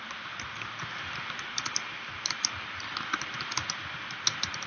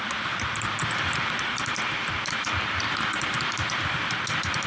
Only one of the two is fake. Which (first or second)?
second